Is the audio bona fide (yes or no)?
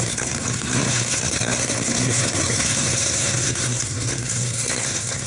no